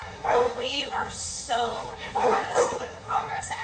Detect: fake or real fake